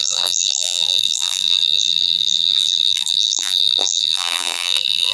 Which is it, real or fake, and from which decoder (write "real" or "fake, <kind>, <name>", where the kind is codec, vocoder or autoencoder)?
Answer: fake, vocoder, BigVGAN v2